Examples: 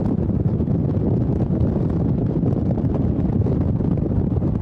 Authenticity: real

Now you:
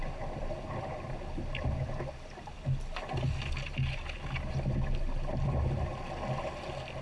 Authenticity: real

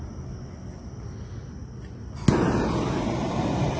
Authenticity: real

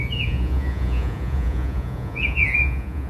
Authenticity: fake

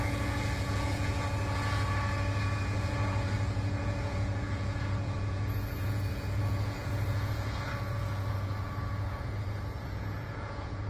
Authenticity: fake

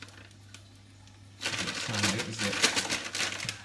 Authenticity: real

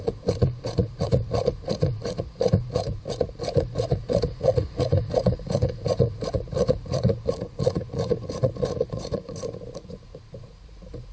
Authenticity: fake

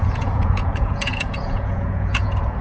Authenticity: fake